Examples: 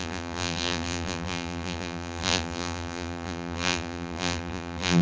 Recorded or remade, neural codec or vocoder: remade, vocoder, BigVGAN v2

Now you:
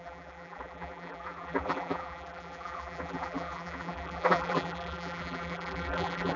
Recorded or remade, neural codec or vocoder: remade, vocoder, BigVGAN v2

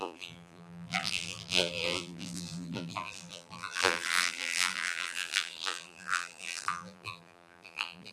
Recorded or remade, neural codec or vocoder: remade, vocoder, BigVGAN v2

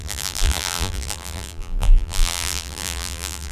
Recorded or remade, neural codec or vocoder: remade, vocoder, BigVGAN v2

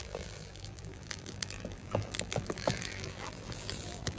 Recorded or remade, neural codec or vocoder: remade, vocoder, BigVGAN v2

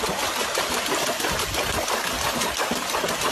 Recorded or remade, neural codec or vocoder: recorded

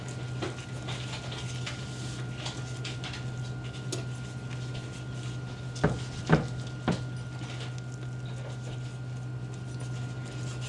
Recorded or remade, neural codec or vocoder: recorded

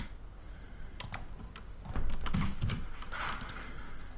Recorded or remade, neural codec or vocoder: recorded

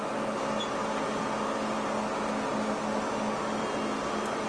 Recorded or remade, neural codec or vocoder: recorded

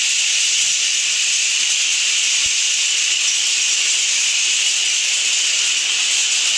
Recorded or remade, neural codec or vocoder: recorded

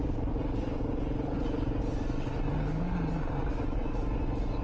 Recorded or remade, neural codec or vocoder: recorded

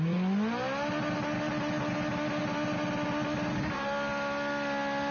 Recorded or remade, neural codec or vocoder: recorded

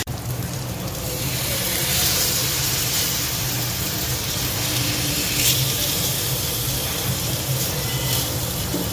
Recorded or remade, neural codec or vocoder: remade, vocoder, BigVGAN v2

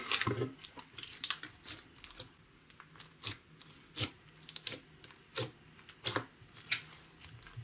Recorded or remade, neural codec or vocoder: recorded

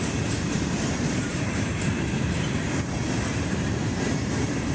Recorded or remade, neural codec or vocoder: remade, vocoder, BigVGAN v2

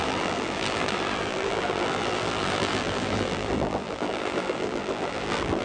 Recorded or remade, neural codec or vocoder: remade, vocoder, BigVGAN v2